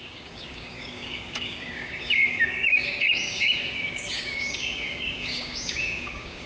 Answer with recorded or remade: remade